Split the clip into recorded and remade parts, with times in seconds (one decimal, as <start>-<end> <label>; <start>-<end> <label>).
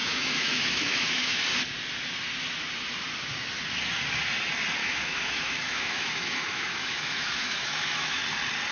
0.0-1.4 remade; 1.4-4.8 recorded; 4.8-8.2 remade; 8.2-8.7 recorded